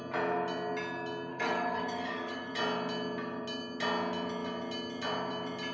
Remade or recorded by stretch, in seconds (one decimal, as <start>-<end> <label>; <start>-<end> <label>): 0.0-1.3 recorded; 1.3-2.5 remade; 2.5-5.7 recorded